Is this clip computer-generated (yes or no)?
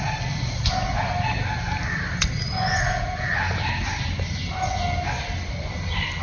no